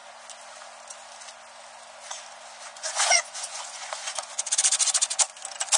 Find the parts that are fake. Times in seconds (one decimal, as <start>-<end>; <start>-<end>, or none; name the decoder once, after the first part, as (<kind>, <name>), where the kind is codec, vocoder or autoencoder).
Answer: 2.7-4.3 (vocoder, Vocos)